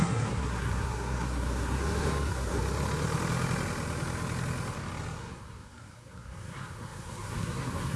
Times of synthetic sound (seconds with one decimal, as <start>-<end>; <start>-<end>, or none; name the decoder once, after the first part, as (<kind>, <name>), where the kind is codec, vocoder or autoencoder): 0.0-2.6 (codec, SNAC); 5.2-8.0